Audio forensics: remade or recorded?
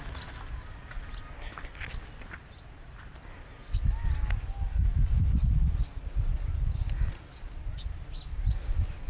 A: recorded